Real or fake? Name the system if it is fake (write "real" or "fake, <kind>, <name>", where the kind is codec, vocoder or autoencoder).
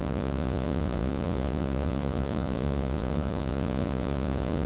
fake, vocoder, Vocos